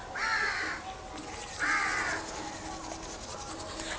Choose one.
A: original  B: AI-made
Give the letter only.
A